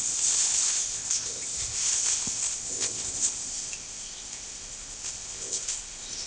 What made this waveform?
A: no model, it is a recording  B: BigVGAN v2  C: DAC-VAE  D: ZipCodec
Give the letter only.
D